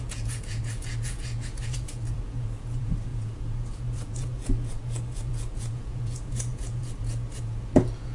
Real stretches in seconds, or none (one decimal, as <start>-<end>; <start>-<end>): none